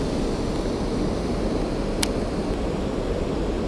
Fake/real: real